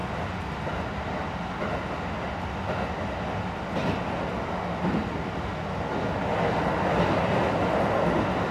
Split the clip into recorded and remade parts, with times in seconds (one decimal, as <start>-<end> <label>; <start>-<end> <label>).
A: 0.0-8.5 recorded